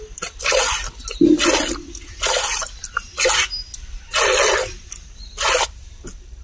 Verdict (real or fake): real